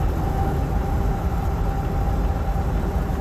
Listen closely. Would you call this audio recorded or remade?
recorded